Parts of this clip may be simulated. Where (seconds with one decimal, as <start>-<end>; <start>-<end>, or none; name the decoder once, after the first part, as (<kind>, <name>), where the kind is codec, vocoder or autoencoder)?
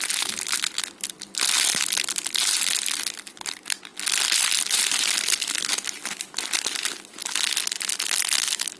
none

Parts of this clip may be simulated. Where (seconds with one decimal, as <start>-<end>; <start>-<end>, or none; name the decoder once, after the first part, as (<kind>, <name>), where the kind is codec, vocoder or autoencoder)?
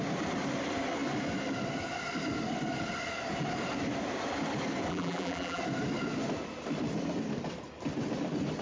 4.9-5.6 (vocoder, BigVGAN v2)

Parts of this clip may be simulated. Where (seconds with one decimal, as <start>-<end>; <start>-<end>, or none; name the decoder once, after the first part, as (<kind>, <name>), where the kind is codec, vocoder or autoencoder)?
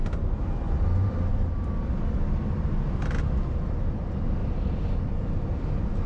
none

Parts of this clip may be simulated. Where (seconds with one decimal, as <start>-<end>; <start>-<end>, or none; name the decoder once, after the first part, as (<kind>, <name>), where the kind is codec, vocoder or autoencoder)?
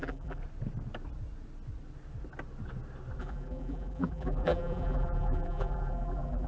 0.0-0.4 (vocoder, BigVGAN v2); 3.2-6.5